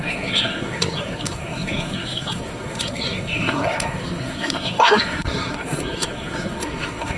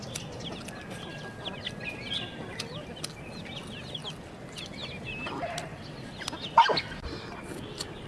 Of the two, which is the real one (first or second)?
second